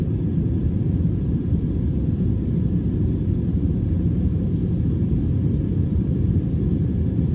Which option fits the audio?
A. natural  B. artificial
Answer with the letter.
B